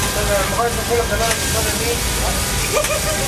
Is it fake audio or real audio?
real